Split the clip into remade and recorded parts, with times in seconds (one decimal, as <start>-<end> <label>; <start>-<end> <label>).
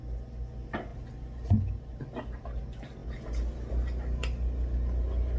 0.0-5.4 recorded